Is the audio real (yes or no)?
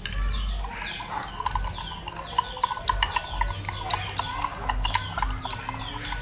yes